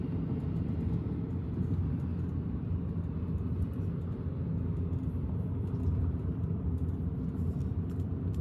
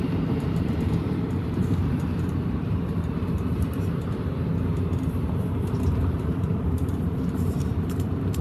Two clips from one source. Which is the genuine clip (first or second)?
first